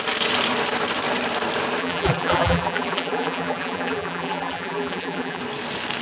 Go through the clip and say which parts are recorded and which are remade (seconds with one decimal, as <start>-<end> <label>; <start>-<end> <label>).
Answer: 0.0-1.8 recorded; 1.8-5.4 remade; 5.4-6.0 recorded